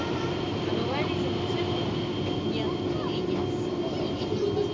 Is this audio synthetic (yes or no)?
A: no